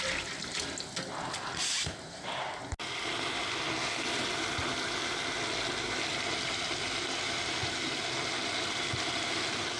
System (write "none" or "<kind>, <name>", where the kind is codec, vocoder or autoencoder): none